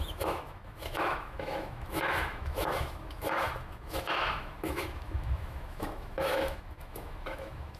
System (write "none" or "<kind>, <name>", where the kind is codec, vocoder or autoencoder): autoencoder, DAC-VAE